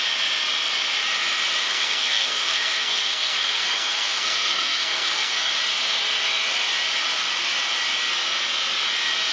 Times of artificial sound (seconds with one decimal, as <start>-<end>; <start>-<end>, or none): 1.6-5.5